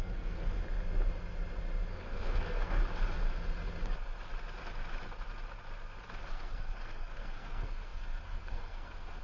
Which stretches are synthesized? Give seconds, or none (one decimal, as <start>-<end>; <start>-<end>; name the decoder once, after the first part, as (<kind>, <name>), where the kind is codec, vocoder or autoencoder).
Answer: 0.0-0.6 (codec, SNAC); 1.9-2.8; 6.3-9.2